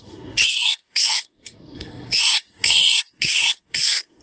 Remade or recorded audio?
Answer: remade